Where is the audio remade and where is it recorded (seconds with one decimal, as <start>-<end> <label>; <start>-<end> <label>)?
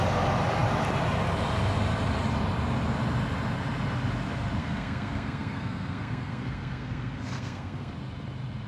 0.0-4.6 recorded; 4.6-7.9 remade; 7.9-8.7 recorded